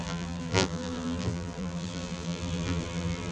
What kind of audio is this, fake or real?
fake